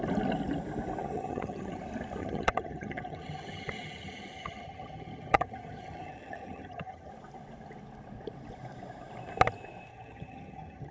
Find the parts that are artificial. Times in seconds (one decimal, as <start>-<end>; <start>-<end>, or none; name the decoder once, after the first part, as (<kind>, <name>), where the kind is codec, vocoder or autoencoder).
1.0-1.8 (vocoder, HiFi-GAN); 2.2-7.1; 9.9-10.9